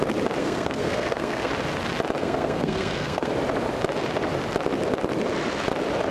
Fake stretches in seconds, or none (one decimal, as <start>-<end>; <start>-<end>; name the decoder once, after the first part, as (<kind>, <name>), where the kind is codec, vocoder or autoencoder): 0.4-1.5 (codec, SNAC); 2.2-3.3